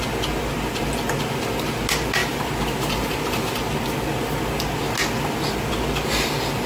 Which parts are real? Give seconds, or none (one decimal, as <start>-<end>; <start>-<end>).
0.0-6.7